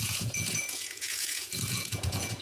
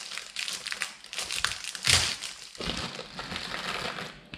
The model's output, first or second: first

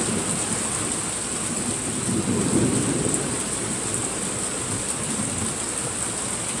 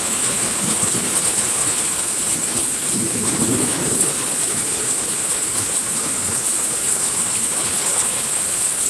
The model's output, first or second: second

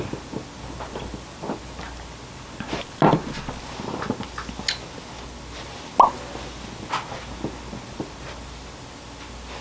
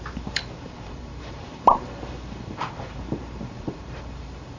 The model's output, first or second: second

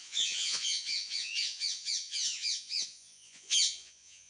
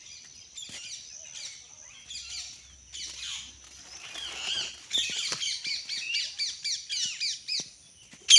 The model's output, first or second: first